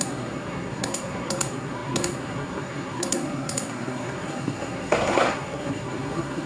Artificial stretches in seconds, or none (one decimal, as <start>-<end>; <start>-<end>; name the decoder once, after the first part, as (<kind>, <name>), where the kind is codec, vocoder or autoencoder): 0.0-6.5 (codec, SNAC)